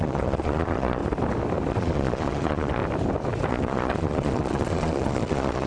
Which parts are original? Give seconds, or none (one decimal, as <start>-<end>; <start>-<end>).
1.0-1.7; 2.8-3.5